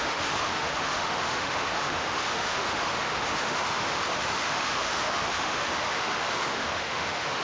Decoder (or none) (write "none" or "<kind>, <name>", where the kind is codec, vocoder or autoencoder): autoencoder, DAC-VAE